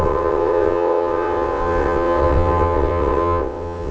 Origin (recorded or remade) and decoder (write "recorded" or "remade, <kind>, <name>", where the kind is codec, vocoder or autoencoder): remade, vocoder, WaveNeXt